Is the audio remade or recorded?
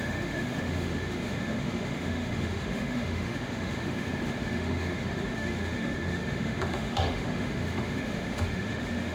remade